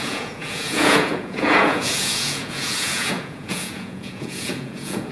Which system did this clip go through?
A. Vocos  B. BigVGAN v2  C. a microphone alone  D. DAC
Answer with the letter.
A